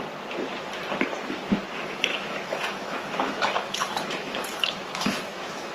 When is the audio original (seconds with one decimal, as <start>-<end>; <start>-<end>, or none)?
0.0-2.1